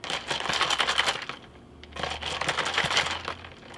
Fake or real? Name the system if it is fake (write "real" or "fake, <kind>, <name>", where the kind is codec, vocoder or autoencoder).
real